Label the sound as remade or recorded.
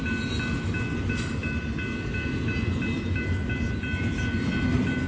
recorded